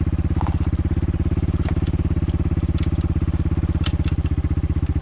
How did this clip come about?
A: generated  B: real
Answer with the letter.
B